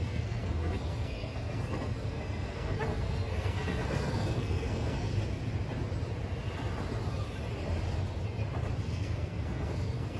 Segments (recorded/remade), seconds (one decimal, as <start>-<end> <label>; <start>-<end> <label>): 0.0-5.1 remade; 5.1-8.8 recorded; 8.8-10.2 remade